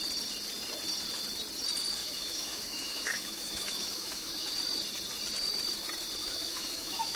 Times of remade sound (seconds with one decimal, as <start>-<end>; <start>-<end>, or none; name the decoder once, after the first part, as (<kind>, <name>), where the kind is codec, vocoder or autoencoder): 2.0-4.5 (autoencoder, DAC-VAE); 6.2-7.2